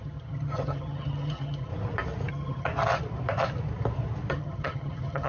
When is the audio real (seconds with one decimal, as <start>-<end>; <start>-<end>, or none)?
1.7-2.3; 2.7-4.3